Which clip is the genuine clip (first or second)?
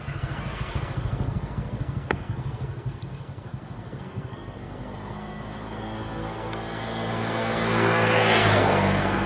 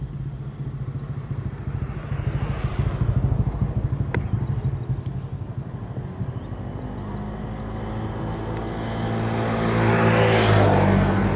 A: second